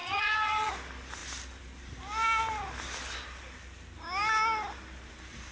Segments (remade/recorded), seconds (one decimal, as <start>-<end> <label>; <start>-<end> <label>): 0.0-0.7 remade; 0.7-5.5 recorded